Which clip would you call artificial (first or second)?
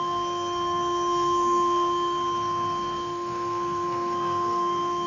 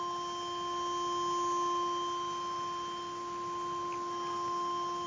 first